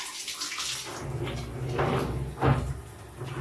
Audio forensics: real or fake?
real